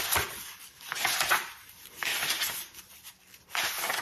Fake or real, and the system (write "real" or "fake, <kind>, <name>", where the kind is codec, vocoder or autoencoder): real